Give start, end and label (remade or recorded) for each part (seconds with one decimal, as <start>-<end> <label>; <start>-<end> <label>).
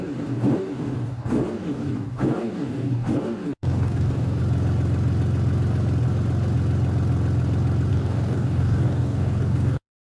0.0-4.4 remade; 4.4-7.9 recorded; 7.9-10.0 remade